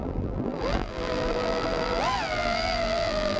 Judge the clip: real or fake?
fake